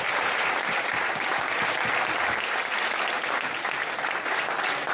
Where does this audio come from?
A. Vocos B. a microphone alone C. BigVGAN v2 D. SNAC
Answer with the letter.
B